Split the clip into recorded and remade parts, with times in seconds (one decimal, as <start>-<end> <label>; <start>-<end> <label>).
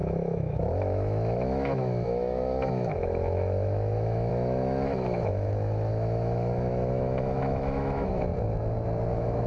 0.0-8.3 remade; 8.3-9.1 recorded; 9.1-9.5 remade